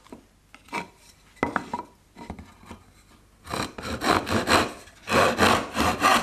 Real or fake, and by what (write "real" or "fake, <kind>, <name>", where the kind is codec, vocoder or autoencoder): real